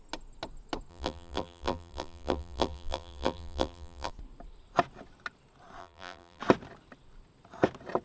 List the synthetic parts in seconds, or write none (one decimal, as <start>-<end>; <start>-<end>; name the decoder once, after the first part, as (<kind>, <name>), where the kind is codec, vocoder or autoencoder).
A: 0.9-4.1 (vocoder, BigVGAN v2); 5.8-6.4